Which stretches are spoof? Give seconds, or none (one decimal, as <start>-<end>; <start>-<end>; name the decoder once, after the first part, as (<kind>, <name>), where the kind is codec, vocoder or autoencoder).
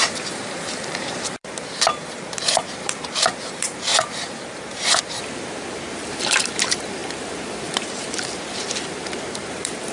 0.0-9.9 (vocoder, BigVGAN v2)